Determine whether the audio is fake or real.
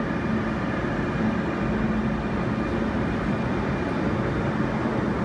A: real